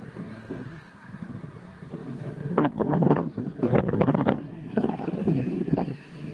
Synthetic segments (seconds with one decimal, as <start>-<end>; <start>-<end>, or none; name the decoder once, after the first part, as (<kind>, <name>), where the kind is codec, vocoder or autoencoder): 0.0-6.3 (codec, SNAC)